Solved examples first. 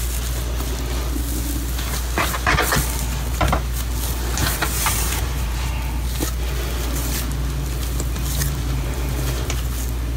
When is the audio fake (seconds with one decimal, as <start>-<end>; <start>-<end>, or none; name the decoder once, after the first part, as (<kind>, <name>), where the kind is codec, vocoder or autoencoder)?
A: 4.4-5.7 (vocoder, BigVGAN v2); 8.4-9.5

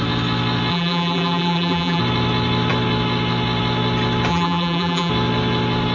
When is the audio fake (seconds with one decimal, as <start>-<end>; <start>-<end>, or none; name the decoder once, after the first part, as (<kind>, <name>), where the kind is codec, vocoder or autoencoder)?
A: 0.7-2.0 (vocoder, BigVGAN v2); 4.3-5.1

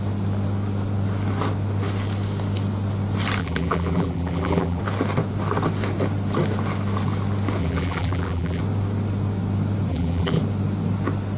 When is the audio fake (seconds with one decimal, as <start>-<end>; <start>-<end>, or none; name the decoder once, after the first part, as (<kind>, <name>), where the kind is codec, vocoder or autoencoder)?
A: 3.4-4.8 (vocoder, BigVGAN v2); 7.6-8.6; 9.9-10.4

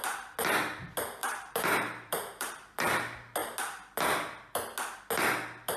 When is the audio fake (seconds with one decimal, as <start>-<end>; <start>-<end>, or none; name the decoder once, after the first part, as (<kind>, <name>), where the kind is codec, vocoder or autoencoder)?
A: 1.2-2.5 (vocoder, BigVGAN v2)

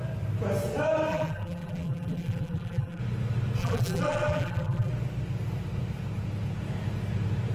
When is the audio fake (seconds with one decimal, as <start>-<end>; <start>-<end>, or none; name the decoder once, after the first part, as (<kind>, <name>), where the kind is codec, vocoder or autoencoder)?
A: 1.1-3.0 (vocoder, BigVGAN v2); 3.6-4.9

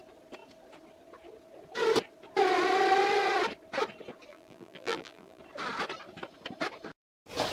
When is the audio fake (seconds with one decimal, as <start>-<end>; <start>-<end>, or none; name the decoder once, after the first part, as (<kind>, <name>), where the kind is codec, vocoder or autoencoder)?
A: 4.3-5.4 (vocoder, BigVGAN v2)